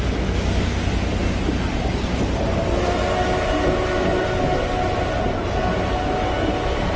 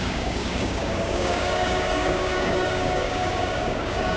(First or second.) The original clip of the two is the first